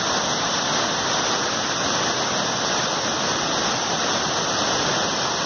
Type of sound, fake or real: real